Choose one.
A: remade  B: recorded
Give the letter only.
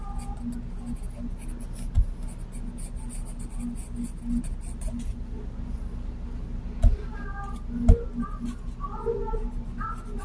B